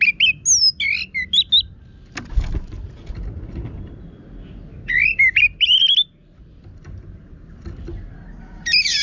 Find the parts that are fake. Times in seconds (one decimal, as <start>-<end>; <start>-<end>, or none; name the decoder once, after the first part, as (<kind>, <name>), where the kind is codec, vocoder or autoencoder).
none